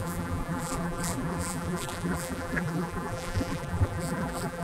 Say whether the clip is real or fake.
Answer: fake